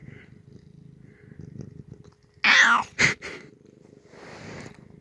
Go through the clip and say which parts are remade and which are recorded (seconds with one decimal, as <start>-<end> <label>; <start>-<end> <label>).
0.0-5.0 recorded